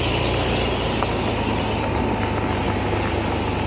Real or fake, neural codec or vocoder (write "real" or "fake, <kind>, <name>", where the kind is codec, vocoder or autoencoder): real